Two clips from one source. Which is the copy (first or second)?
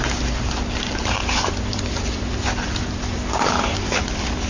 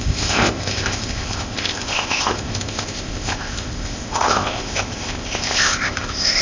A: second